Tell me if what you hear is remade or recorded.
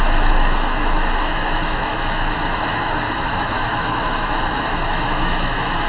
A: remade